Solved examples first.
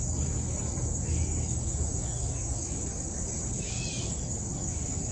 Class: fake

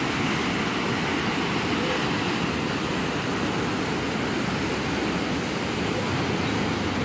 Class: real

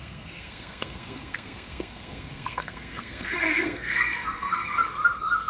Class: fake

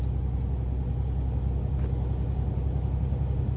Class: real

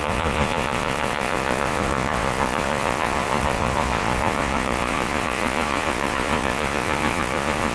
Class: fake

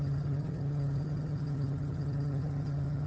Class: fake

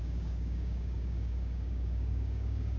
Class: fake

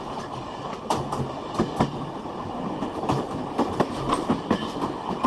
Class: real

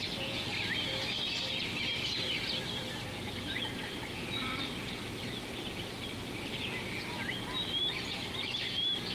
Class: real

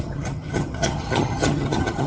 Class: fake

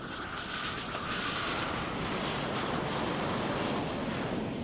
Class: real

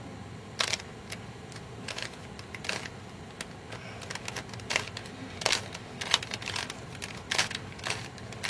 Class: real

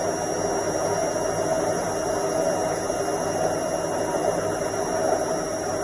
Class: real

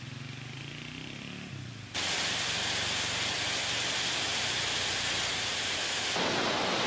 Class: real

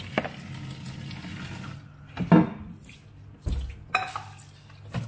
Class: real